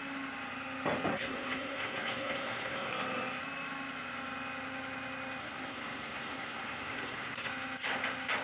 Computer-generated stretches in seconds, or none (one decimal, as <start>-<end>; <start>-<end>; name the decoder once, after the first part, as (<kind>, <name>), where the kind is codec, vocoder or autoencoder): 1.1-2.9 (codec, SNAC); 5.4-7.5